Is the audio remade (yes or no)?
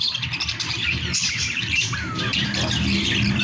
yes